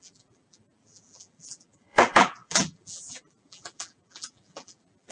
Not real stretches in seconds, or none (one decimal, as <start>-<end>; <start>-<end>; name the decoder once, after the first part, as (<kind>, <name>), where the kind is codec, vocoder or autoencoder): 0.0-5.1 (vocoder, BigVGAN v2)